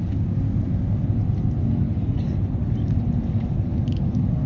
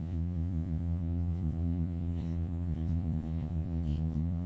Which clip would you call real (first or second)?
first